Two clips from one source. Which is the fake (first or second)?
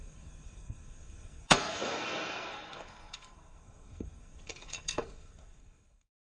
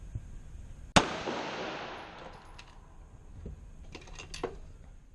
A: first